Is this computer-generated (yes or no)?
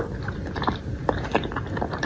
no